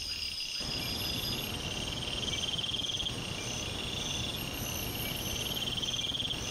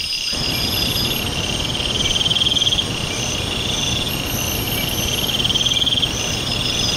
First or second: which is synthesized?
second